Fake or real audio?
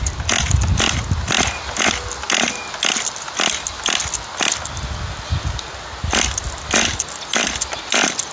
real